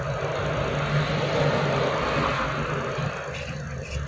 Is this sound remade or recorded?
recorded